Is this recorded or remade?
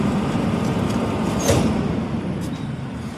remade